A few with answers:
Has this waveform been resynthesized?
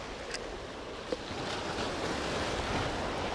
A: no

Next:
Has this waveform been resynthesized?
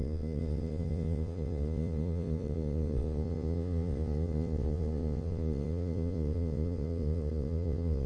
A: yes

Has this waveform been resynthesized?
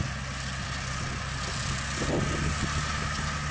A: no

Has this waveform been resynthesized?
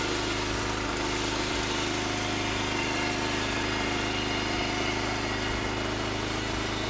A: no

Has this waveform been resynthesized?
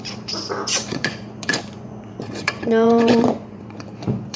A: yes